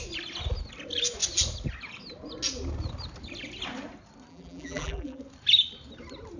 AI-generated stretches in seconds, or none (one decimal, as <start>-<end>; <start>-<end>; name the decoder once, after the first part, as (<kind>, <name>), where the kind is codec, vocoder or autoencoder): 4.3-5.2 (vocoder, BigVGAN v2)